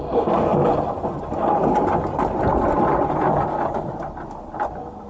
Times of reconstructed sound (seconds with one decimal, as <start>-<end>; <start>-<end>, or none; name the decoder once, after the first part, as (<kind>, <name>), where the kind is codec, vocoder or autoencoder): none